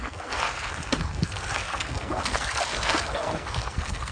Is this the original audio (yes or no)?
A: no